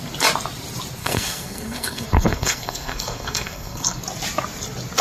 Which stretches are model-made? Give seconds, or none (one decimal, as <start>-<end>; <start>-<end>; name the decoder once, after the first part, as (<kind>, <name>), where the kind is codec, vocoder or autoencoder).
1.0-4.0 (codec, SNAC)